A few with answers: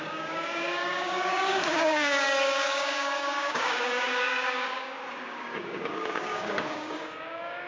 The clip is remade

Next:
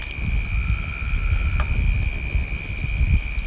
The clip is recorded